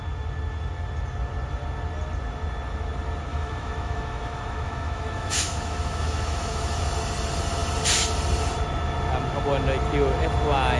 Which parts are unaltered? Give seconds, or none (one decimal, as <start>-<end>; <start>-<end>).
0.0-3.3; 6.8-10.8